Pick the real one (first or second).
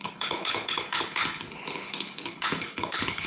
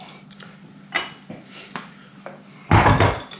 second